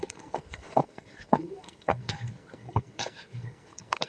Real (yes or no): no